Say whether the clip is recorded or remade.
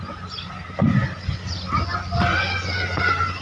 recorded